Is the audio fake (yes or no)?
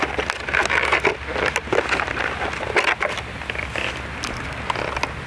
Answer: no